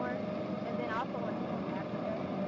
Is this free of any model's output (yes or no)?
yes